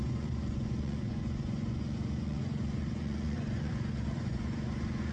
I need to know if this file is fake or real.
fake